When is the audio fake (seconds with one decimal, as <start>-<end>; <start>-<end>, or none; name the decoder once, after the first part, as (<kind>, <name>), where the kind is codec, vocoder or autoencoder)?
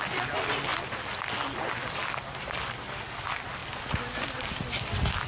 none